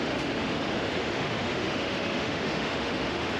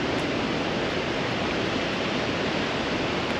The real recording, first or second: second